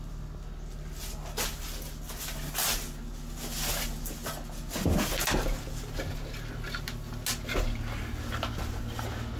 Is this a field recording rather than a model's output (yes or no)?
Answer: yes